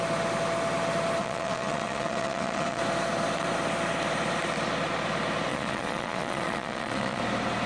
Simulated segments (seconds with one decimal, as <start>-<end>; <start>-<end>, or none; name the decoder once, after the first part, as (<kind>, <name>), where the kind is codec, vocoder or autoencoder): 1.2-2.8 (vocoder, Vocos); 5.5-7.2